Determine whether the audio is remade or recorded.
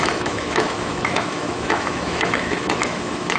remade